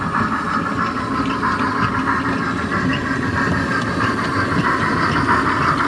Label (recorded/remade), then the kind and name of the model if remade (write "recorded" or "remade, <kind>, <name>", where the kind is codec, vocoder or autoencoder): recorded